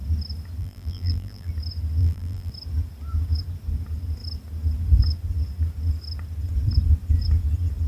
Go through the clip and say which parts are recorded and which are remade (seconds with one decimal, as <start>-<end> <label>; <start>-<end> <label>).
0.0-0.6 recorded; 0.6-1.5 remade; 1.5-2.0 recorded; 2.0-2.5 remade; 2.5-7.9 recorded